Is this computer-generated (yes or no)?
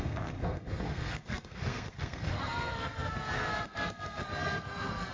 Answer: yes